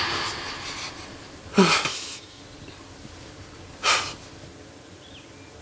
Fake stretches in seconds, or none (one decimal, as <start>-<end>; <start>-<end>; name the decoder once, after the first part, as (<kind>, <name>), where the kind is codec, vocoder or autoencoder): 1.9-2.4 (autoencoder, DAC-VAE)